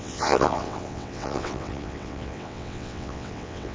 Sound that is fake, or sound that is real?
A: fake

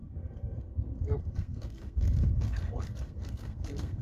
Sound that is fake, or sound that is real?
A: fake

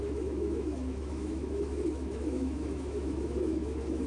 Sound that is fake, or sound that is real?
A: fake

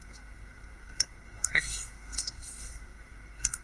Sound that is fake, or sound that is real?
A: fake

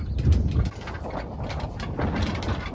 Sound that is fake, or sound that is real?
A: real